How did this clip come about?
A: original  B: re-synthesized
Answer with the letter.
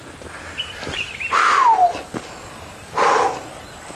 A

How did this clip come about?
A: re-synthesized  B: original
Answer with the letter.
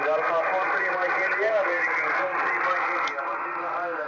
B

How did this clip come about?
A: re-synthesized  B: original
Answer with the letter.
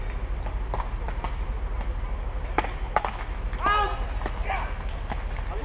B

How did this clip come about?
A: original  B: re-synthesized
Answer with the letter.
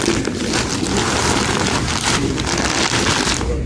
A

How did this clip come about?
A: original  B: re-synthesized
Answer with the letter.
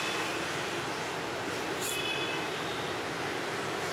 A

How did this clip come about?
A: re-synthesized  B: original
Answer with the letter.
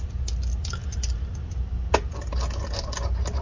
B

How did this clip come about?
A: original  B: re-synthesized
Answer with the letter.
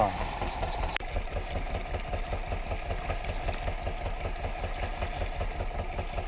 A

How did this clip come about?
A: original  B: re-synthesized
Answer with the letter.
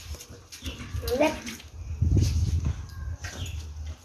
A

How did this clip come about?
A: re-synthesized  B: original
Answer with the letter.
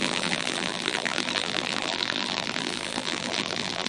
A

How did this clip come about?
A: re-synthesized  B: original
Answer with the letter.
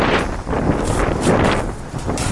A